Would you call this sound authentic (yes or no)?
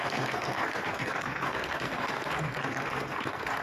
no